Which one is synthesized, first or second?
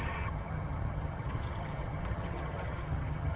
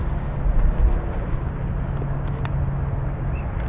first